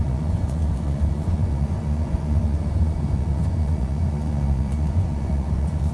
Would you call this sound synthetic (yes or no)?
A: yes